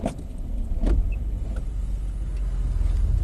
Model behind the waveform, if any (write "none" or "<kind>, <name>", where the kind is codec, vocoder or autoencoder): none